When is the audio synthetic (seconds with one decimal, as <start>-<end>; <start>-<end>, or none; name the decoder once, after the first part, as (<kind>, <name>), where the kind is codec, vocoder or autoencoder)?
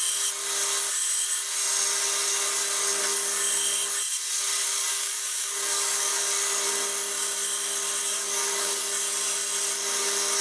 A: 4.8-6.2 (codec, DAC); 8.0-8.8